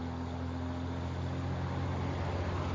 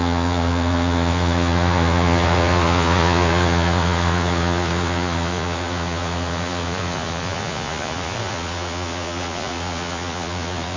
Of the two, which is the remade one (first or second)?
second